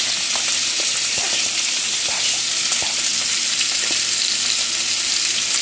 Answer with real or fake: real